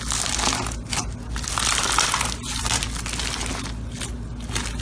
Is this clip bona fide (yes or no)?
yes